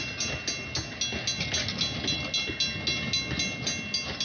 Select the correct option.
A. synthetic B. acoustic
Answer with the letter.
B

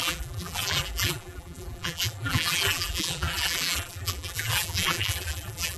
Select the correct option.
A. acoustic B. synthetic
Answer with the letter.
B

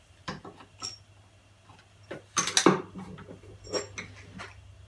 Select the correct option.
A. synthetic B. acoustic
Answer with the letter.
B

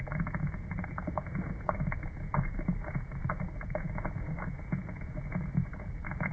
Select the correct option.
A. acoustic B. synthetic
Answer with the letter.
B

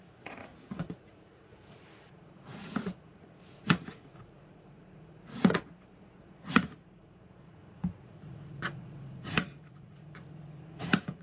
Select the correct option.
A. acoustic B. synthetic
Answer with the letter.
B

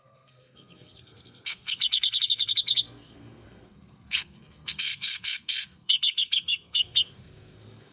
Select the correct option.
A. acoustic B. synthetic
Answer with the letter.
B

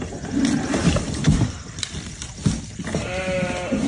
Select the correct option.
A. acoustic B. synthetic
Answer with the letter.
A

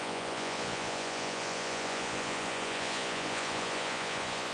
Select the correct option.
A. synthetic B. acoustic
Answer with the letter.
A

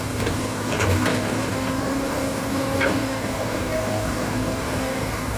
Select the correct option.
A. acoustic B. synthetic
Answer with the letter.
B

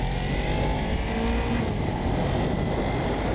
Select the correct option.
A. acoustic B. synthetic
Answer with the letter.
A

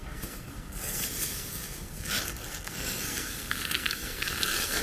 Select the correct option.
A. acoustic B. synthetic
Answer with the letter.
B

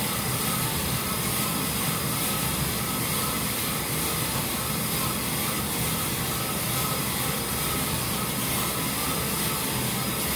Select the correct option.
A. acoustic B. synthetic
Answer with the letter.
B